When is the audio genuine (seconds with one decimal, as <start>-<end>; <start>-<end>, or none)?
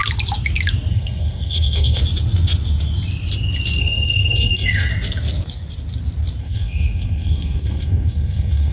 0.0-0.9; 2.0-3.8; 4.9-6.4